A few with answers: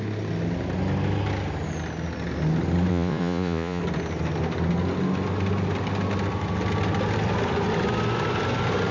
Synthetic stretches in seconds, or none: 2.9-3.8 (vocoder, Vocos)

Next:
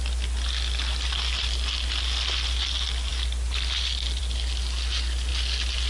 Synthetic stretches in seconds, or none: none

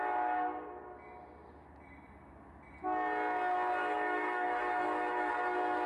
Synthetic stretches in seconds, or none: 3.8-5.3 (autoencoder, DAC-VAE)